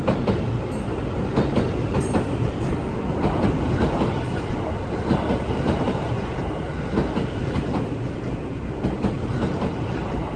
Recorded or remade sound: remade